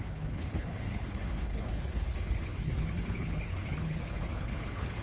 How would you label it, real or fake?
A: fake